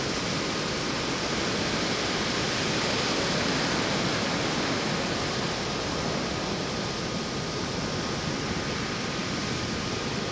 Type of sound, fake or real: real